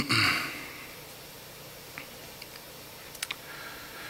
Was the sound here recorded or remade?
recorded